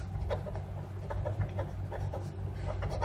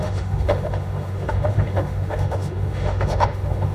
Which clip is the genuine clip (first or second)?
first